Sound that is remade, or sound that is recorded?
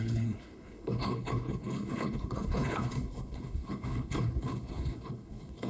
remade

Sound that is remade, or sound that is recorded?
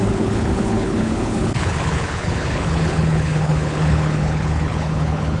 remade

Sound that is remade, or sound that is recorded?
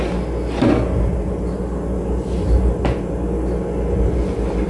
recorded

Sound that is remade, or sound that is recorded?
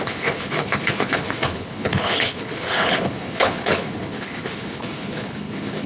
remade